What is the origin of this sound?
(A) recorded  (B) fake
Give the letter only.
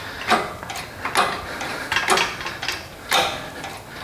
A